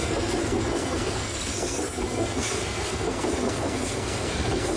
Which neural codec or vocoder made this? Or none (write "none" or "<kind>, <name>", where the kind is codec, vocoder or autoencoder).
codec, SNAC